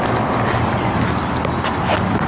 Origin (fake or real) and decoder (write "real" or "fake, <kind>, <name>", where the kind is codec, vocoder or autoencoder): real